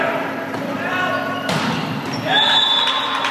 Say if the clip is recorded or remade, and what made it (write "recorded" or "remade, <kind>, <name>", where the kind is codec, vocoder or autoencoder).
remade, vocoder, BigVGAN v2